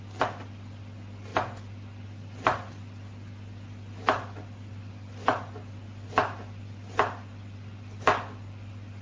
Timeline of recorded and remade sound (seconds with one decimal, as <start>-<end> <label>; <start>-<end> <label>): 0.0-9.0 recorded